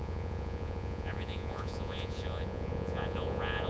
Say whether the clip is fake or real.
fake